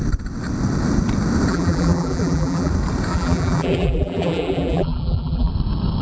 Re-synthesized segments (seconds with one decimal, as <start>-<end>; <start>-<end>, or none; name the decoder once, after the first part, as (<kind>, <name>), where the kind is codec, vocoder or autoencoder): 1.5-2.7 (vocoder, BigVGAN v2); 3.1-5.5